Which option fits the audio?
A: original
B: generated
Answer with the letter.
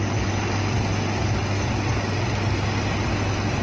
A